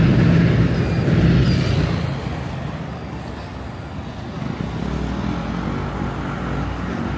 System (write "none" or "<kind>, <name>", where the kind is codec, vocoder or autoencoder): none